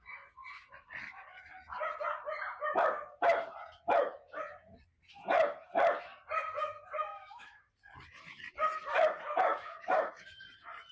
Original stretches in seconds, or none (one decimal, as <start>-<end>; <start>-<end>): 0.0-7.1; 7.7-9.5; 10.1-10.9